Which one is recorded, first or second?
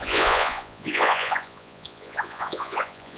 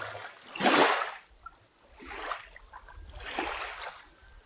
second